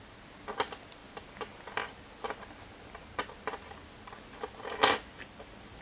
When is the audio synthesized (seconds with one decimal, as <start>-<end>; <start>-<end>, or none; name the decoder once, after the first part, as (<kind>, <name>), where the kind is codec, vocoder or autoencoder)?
none